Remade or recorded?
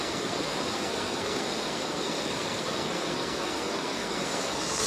remade